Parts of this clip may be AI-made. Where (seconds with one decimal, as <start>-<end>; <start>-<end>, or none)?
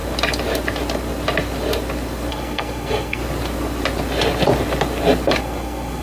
2.3-3.2; 5.4-6.0